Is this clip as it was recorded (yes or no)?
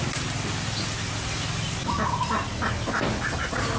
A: yes